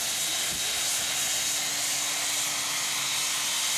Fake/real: real